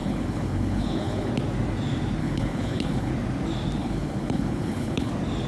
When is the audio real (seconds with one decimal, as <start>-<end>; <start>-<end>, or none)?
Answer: 1.3-2.2; 3.1-3.8; 5.1-5.5